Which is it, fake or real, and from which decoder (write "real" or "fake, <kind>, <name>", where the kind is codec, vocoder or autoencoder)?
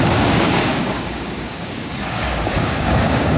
fake, codec, DAC